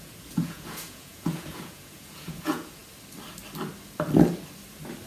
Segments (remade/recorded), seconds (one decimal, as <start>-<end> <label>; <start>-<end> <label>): 0.0-2.8 remade; 2.8-5.1 recorded